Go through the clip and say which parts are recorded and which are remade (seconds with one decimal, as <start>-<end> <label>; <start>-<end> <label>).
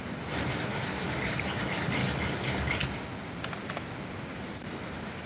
0.0-2.0 remade; 2.0-4.3 recorded; 4.3-5.2 remade